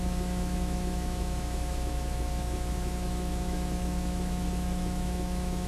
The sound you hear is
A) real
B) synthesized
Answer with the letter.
B